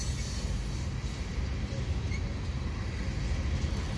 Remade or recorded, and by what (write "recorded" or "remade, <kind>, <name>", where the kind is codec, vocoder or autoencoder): recorded